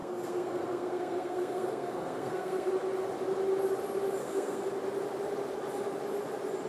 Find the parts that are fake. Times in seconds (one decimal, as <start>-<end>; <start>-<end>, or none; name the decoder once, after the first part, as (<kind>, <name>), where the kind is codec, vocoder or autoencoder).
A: 0.0-2.7 (codec, SNAC); 4.2-4.7